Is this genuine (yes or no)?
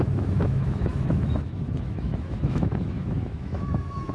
no